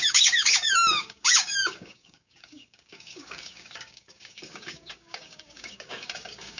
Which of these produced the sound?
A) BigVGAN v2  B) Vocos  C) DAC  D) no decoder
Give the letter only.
C